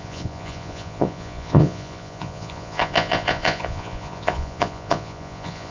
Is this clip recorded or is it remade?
remade